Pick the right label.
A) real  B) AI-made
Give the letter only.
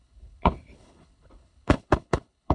B